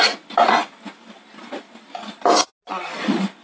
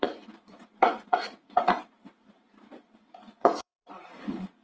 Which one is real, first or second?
first